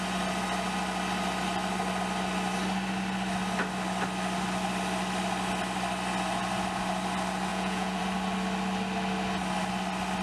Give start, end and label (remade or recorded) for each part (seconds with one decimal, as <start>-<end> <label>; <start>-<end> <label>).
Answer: 0.0-7.5 recorded; 7.5-8.0 remade; 8.0-10.2 recorded

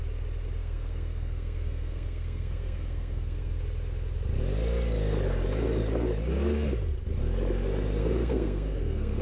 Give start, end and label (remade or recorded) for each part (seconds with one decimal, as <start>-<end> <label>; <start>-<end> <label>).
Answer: 0.0-0.6 recorded; 0.6-3.6 remade; 3.6-8.0 recorded; 8.0-9.2 remade

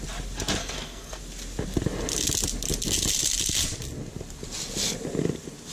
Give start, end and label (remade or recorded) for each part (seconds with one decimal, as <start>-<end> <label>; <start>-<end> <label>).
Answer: 0.0-0.6 recorded; 0.6-1.2 remade; 1.2-5.7 recorded

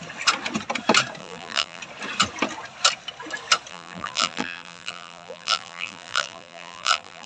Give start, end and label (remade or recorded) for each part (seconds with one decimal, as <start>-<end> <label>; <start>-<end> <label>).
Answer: 0.0-1.2 recorded; 1.2-1.8 remade; 1.8-3.7 recorded; 3.7-7.3 remade

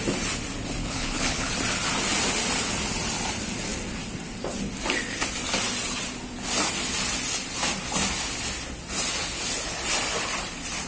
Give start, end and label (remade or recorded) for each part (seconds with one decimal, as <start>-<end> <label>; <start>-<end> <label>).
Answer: 0.0-0.8 recorded; 0.8-1.5 remade; 1.5-10.9 recorded

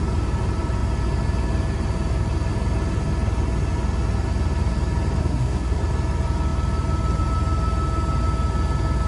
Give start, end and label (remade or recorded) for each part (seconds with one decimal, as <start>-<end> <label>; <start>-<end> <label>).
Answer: 0.0-5.2 recorded; 5.2-5.8 remade; 5.8-9.1 recorded